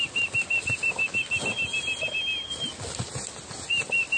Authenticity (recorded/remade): recorded